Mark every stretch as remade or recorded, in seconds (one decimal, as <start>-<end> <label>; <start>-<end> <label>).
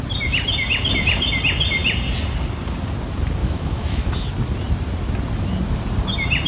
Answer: 0.0-3.4 recorded; 3.4-4.1 remade; 4.1-6.5 recorded